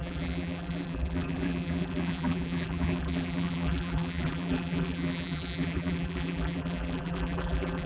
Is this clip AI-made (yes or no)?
yes